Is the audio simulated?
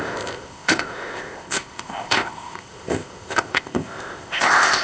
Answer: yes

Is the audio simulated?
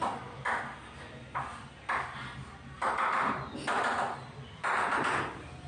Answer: no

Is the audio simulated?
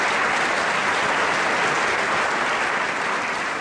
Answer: no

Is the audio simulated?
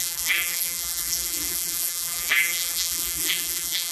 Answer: yes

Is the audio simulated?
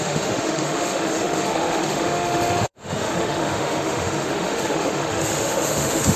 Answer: yes